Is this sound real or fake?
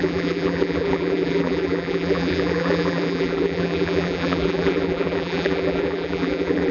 fake